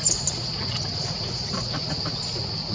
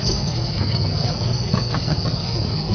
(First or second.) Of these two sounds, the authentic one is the first